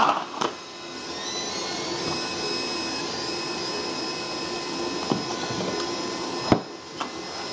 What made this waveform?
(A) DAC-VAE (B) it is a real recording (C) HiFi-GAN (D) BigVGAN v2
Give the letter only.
B